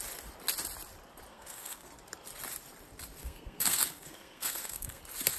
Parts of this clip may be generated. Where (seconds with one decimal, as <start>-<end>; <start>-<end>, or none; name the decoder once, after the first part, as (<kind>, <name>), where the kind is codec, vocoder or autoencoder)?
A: 1.3-1.9 (codec, SNAC); 3.2-5.0